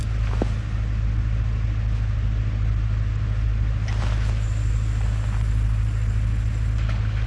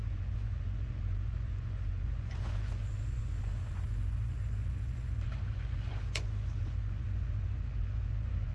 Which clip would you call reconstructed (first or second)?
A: second